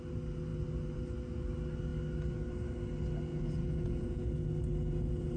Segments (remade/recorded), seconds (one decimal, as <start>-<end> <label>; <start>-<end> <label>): 0.0-3.3 recorded; 3.3-4.3 remade; 4.3-5.4 recorded